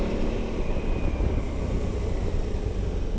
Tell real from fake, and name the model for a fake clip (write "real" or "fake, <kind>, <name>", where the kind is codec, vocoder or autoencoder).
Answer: real